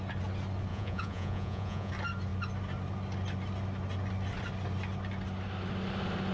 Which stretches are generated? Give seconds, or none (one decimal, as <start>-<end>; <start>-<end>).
0.7-1.9